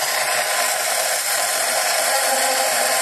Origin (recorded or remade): remade